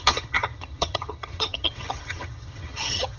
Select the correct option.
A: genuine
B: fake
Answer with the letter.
B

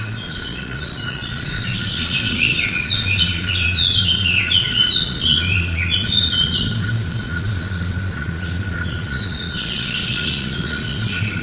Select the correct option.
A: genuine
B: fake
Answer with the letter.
B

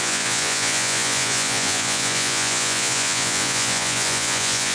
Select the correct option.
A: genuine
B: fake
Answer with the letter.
B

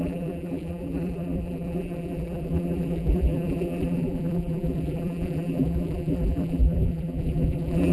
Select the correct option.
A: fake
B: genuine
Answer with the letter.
A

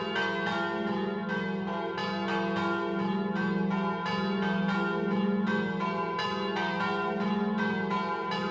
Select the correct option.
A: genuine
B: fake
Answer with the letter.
A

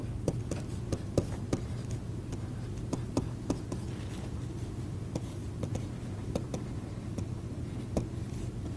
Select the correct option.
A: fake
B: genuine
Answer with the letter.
B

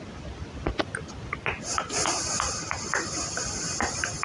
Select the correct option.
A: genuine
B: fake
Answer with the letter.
A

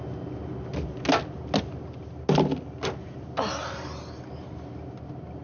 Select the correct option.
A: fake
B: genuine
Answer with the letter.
B